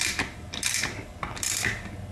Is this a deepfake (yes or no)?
yes